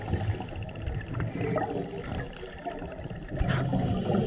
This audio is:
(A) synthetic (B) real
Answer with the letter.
B